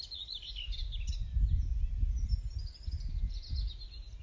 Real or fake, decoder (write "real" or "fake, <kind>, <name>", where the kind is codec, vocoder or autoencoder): real